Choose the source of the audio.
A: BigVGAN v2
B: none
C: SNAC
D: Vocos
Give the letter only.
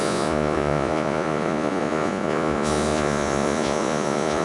D